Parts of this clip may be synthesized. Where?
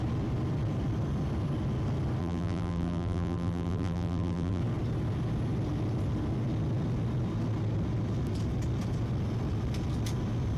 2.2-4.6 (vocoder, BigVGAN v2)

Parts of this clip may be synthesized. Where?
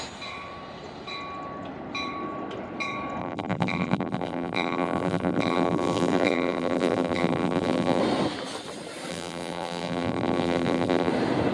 3.2-8.0 (vocoder, BigVGAN v2); 9.1-11.1